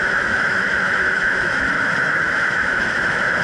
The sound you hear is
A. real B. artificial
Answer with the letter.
B